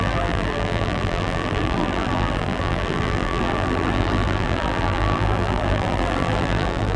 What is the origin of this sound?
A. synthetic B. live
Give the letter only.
A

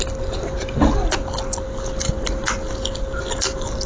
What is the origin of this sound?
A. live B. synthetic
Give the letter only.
A